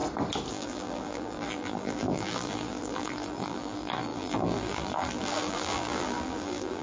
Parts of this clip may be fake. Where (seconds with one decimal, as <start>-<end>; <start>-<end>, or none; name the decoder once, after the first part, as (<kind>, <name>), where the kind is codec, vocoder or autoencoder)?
0.5-6.8 (vocoder, BigVGAN v2)